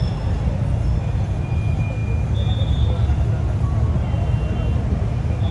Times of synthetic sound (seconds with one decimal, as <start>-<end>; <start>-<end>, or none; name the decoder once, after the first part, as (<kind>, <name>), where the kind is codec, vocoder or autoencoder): none